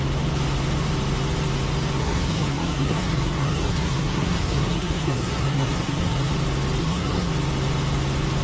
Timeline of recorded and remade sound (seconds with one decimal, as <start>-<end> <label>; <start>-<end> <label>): 0.0-2.0 recorded; 2.0-6.3 remade; 6.3-6.8 recorded; 6.8-7.3 remade; 7.3-8.4 recorded